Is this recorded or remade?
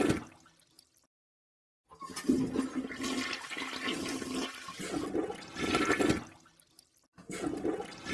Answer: recorded